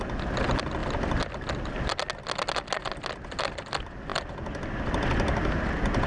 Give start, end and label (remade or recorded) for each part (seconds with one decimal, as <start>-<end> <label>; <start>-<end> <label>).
0.0-6.1 recorded